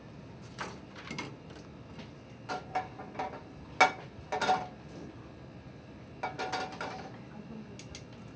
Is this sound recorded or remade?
recorded